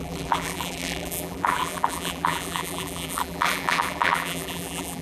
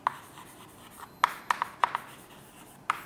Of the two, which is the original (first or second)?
second